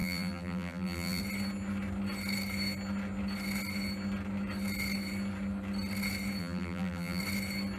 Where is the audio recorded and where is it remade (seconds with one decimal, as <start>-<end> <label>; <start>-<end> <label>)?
0.0-1.2 remade; 1.2-6.4 recorded; 6.4-7.2 remade; 7.2-7.8 recorded